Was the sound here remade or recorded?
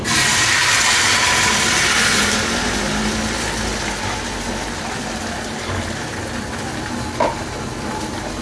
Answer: recorded